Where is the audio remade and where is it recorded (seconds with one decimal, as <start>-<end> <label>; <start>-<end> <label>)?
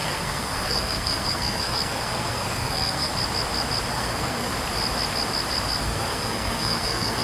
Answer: 0.0-3.1 remade; 3.1-3.9 recorded; 3.9-4.5 remade; 4.5-5.8 recorded; 5.8-7.2 remade